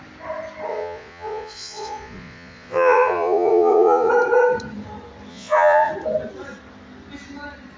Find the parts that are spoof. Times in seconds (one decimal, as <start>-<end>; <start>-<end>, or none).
0.7-4.1; 5.3-5.9